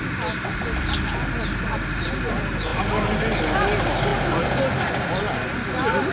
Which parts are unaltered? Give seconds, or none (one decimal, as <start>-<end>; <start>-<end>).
0.0-6.1